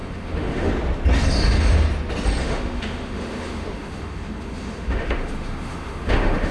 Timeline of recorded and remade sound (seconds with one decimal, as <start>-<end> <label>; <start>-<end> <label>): 0.0-0.7 remade; 0.7-2.4 recorded; 2.4-6.5 remade